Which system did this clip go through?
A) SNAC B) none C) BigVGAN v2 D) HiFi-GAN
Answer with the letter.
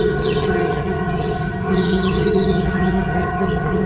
D